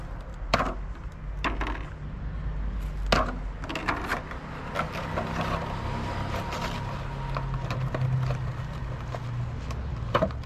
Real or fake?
real